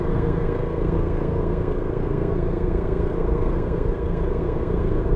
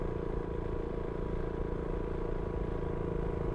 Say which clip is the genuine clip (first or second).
second